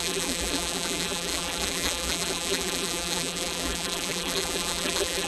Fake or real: fake